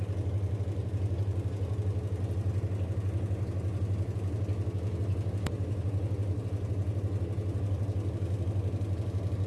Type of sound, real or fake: real